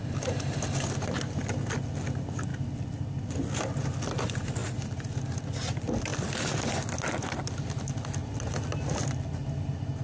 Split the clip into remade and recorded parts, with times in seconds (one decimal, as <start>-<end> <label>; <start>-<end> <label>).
0.0-10.0 recorded